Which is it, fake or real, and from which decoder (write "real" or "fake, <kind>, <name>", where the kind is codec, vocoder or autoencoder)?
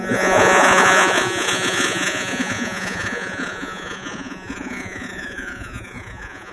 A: fake, vocoder, Vocos